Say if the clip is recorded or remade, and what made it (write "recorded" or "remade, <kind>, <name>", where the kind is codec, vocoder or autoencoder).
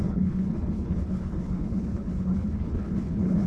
remade, codec, HILCodec